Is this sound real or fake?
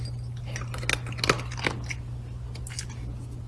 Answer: real